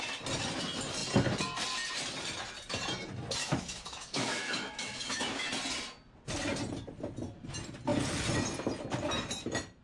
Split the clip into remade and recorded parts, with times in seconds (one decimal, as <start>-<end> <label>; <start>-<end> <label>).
0.0-3.4 recorded; 3.4-5.5 remade; 5.5-9.8 recorded